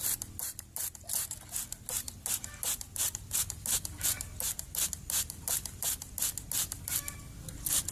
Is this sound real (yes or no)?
yes